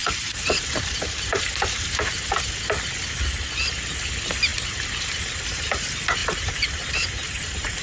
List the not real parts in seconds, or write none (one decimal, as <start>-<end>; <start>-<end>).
0.0-2.4; 4.5-5.8; 6.2-7.8